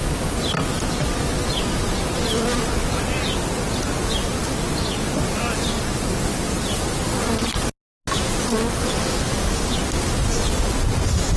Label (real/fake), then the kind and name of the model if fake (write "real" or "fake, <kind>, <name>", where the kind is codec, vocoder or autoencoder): real